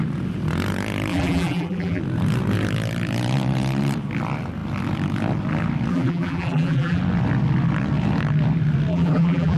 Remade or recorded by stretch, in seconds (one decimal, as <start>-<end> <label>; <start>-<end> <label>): 0.0-1.1 recorded; 1.1-2.0 remade; 2.0-5.9 recorded; 5.9-7.0 remade; 7.0-8.9 recorded; 8.9-9.6 remade